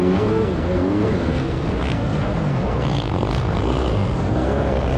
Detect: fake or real fake